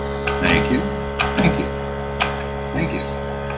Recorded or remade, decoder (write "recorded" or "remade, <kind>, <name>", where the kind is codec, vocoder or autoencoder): recorded